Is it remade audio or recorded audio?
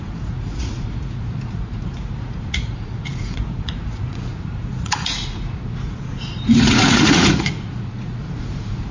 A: remade